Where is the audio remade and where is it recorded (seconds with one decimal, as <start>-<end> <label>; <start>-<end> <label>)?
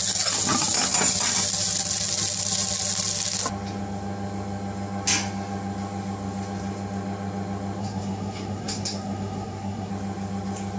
0.0-7.8 recorded; 7.8-9.9 remade; 9.9-10.8 recorded